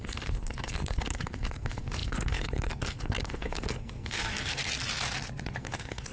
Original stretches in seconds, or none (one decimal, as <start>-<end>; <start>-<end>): 4.6-5.6